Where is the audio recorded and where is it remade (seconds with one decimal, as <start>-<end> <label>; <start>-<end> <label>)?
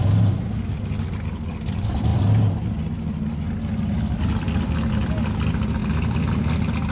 0.0-6.9 recorded